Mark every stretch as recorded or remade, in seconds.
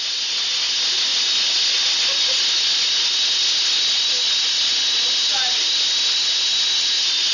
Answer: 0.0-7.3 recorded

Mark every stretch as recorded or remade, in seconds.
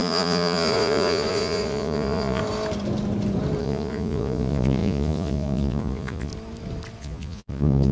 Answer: 0.0-2.4 remade; 2.4-3.6 recorded; 3.6-6.3 remade; 6.3-7.0 recorded; 7.0-7.9 remade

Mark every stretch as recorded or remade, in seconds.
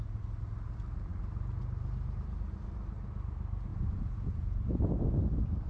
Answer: 0.0-3.7 recorded; 3.7-4.8 remade; 4.8-5.7 recorded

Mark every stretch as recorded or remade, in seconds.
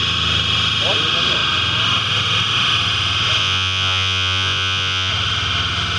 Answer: 0.0-3.4 recorded; 3.4-5.1 remade; 5.1-6.0 recorded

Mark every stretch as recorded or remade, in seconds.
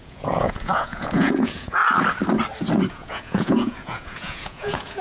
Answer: 0.0-1.8 remade; 1.8-2.9 recorded; 2.9-5.0 remade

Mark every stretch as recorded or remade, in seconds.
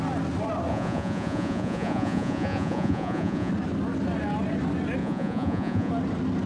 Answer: 0.0-0.7 recorded; 0.7-3.5 remade; 3.5-5.0 recorded; 5.0-5.9 remade; 5.9-6.5 recorded